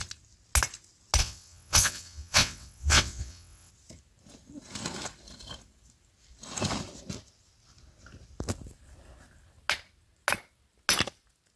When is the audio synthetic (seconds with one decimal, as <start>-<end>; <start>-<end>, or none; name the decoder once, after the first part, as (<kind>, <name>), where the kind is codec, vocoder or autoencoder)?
1.2-3.7 (vocoder, WaveNeXt)